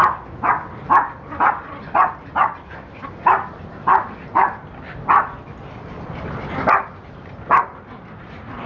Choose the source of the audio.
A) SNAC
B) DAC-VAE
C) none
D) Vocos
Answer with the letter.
C